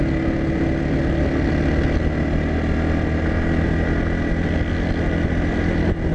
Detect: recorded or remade recorded